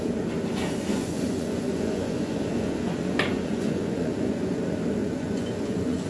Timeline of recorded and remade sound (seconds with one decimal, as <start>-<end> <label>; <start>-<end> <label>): 0.0-0.9 recorded; 0.9-4.6 remade; 4.6-5.0 recorded; 5.0-6.1 remade